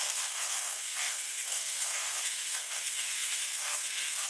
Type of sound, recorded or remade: remade